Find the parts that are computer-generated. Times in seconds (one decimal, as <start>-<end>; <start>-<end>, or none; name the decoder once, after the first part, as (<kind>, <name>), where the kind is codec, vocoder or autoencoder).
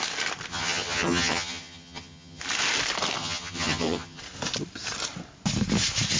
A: 0.5-2.4 (vocoder, HiFi-GAN); 3.2-4.2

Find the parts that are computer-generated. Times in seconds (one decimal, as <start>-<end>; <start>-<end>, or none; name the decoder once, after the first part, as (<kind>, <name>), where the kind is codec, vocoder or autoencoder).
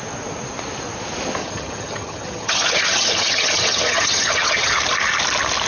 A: 1.4-4.8 (vocoder, HiFi-GAN)